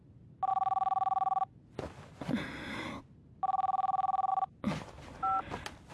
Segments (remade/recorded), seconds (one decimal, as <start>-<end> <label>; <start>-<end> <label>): 0.0-5.9 recorded